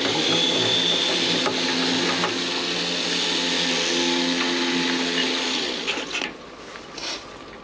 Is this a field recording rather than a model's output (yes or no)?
yes